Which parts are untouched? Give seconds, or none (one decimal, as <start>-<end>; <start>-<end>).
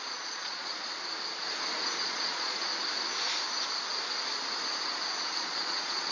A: 0.7-2.0; 2.7-5.2